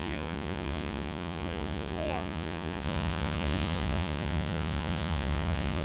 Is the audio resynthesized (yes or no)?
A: yes